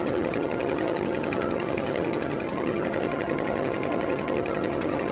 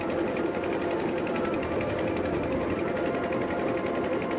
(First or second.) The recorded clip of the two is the second